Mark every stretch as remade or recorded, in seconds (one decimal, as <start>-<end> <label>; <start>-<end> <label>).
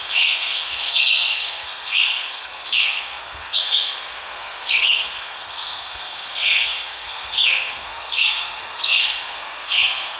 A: 0.0-10.2 remade